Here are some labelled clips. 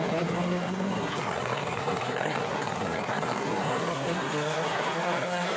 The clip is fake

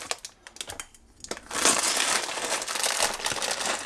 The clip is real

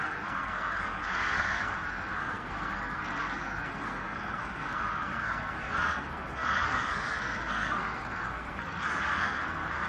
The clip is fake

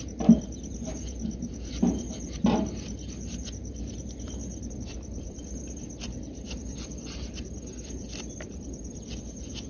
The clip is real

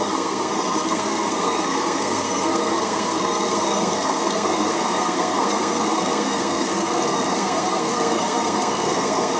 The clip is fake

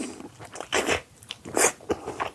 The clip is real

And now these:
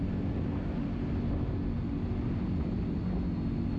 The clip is real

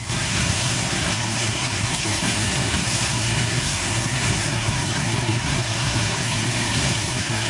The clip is fake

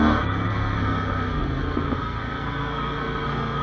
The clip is fake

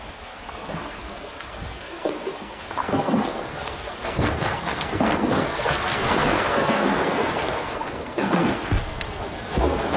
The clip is fake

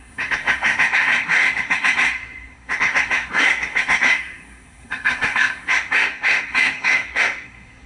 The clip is fake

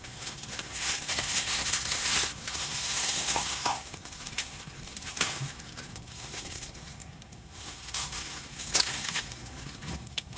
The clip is fake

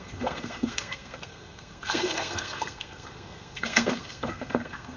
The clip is fake